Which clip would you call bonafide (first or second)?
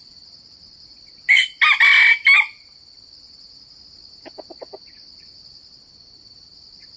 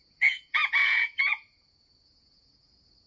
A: first